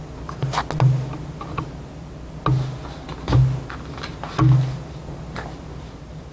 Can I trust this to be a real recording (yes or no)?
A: yes